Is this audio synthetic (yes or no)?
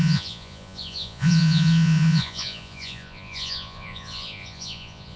yes